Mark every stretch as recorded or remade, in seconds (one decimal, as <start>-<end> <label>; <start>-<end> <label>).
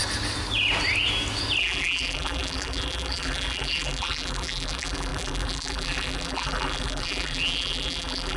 0.0-1.6 recorded; 1.6-8.4 remade